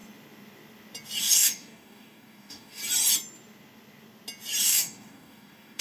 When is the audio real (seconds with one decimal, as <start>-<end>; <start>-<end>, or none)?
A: 0.0-1.2; 2.8-4.6

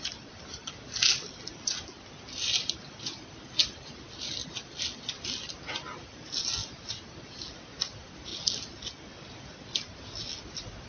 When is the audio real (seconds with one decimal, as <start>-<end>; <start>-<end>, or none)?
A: 0.0-10.9

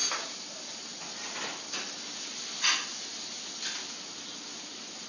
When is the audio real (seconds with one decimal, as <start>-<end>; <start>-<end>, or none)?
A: 0.0-5.1

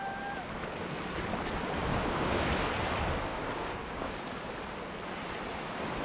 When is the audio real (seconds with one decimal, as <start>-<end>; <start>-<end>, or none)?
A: 0.0-1.8; 2.5-3.3; 4.1-6.0

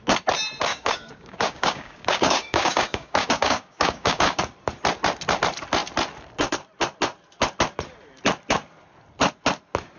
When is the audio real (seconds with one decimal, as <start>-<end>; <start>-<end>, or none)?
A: 0.0-0.7; 4.4-10.0

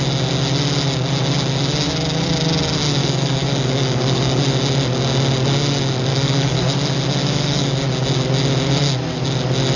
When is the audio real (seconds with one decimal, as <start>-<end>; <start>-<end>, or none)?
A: 0.0-3.0; 4.4-6.1; 6.7-7.2; 7.7-9.8